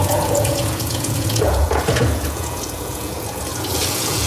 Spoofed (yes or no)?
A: yes